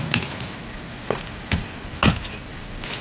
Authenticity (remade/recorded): recorded